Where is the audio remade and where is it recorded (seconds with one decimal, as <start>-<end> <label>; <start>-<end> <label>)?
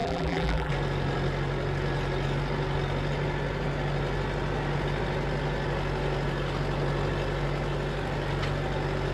0.0-0.7 remade; 0.7-9.1 recorded